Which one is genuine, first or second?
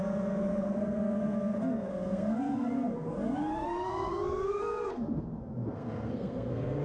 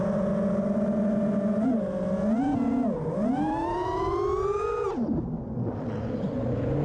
second